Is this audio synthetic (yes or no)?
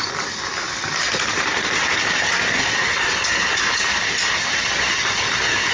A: no